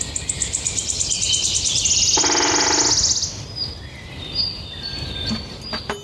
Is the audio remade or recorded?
recorded